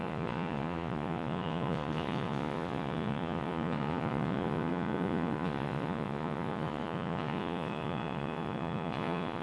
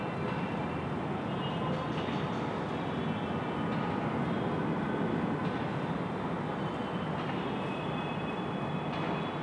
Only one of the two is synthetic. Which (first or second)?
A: first